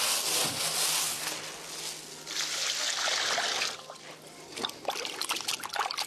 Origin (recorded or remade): recorded